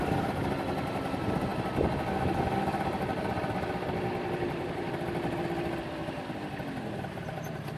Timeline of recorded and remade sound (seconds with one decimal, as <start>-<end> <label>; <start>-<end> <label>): 0.0-7.8 recorded